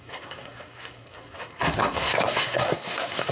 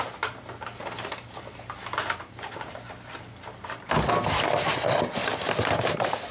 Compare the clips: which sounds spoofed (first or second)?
first